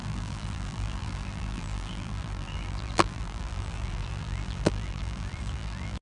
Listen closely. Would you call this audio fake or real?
fake